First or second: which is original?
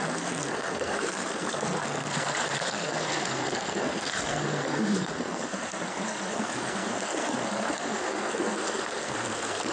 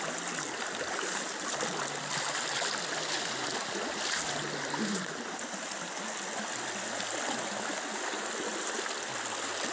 second